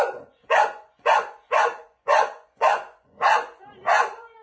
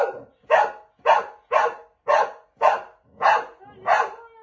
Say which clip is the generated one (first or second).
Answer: first